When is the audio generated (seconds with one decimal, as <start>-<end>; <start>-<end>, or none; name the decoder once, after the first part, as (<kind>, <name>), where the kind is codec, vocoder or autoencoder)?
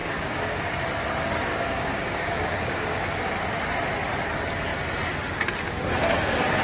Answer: 0.0-0.6 (codec, DAC); 1.5-3.2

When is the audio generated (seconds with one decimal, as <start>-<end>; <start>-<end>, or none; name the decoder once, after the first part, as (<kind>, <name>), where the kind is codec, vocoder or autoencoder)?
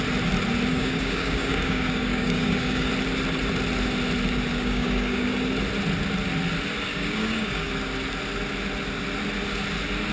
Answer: 0.7-2.9 (codec, DAC); 4.5-5.3; 6.9-7.7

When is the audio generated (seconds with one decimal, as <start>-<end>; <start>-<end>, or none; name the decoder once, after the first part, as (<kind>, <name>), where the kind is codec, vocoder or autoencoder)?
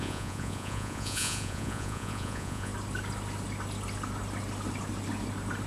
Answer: 0.0-2.7 (vocoder, Vocos)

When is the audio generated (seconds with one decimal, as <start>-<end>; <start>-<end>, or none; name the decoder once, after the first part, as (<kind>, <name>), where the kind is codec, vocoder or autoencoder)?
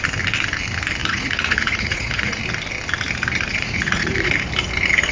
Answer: 1.0-2.4 (vocoder, Vocos); 3.5-4.3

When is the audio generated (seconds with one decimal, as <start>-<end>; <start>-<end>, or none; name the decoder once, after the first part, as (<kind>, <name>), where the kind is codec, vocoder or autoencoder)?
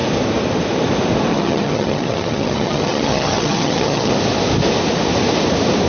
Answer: 1.3-4.1 (vocoder, HiFi-GAN)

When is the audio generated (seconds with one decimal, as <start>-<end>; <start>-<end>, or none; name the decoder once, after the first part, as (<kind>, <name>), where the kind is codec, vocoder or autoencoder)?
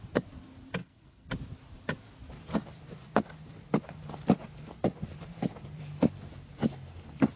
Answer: 0.8-1.3 (codec, SNAC)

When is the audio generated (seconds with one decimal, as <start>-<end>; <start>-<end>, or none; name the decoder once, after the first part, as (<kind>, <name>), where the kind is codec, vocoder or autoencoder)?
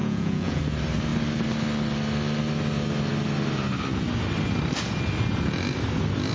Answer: 0.0-0.6 (vocoder, Vocos)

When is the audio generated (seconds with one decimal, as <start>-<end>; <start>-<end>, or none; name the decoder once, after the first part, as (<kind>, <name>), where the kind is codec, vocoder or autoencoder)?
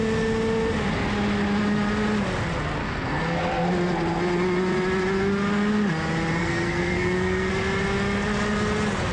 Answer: 2.8-3.4 (codec, SNAC); 6.4-7.5